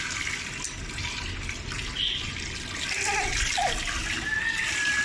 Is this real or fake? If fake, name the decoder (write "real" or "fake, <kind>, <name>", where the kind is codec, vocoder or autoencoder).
real